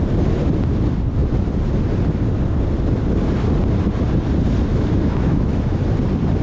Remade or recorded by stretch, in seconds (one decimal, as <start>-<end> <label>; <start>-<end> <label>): 0.0-4.7 recorded; 4.7-5.7 remade; 5.7-6.4 recorded